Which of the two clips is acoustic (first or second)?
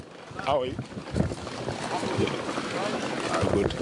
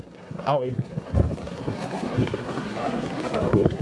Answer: first